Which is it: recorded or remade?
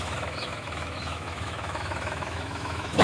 remade